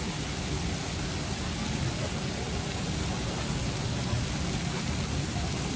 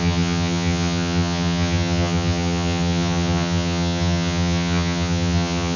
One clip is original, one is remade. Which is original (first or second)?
first